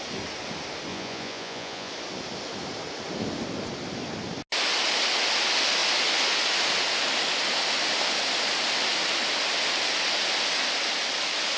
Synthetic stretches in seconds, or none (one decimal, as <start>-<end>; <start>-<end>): 0.9-1.9